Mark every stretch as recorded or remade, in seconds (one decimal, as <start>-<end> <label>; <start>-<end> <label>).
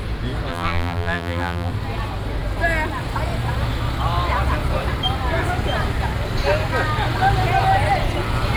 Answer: 0.0-0.5 recorded; 0.5-1.7 remade; 1.7-8.6 recorded